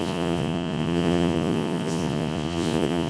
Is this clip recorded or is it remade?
remade